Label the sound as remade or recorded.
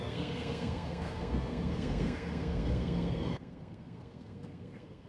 remade